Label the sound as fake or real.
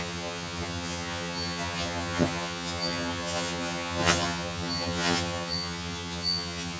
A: fake